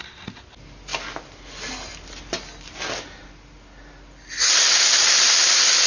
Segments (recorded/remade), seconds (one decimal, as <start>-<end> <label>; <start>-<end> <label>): 0.0-5.9 recorded